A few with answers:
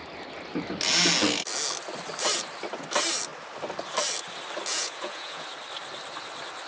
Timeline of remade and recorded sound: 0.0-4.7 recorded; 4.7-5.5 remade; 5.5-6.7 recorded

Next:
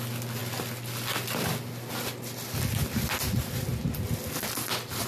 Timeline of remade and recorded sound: 0.0-5.1 recorded

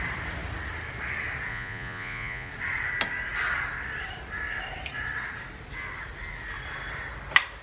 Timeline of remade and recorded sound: 0.0-1.5 recorded; 1.5-2.5 remade; 2.5-7.6 recorded

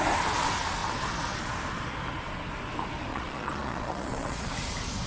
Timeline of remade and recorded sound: 0.0-3.1 recorded; 3.1-4.5 remade; 4.5-5.1 recorded

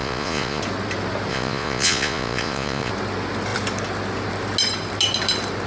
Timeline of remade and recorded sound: 0.0-0.6 remade; 0.6-1.3 recorded; 1.3-2.9 remade; 2.9-5.7 recorded

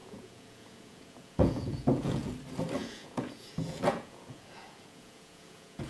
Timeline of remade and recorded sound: 0.0-2.3 remade; 2.3-2.8 recorded; 2.8-5.9 remade

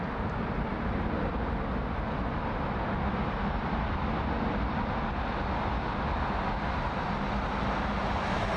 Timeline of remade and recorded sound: 0.0-8.6 recorded